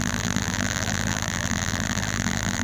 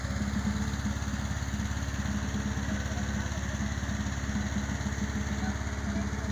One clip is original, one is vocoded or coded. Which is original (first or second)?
second